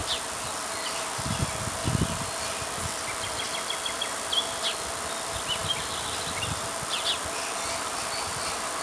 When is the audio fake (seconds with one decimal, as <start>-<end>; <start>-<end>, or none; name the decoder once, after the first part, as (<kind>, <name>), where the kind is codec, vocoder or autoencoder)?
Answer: 1.8-2.8 (vocoder, BigVGAN v2); 5.6-6.2